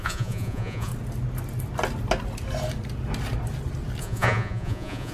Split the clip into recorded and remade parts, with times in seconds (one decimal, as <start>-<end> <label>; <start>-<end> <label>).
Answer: 0.0-0.9 remade; 0.9-4.0 recorded; 4.0-5.1 remade